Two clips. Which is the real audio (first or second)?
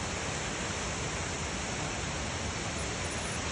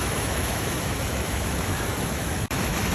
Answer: first